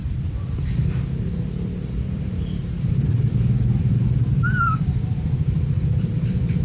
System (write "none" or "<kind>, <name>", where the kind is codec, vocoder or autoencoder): vocoder, BigVGAN v2